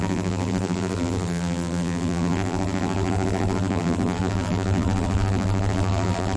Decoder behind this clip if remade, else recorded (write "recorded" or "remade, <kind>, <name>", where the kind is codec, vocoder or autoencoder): remade, vocoder, BigVGAN v2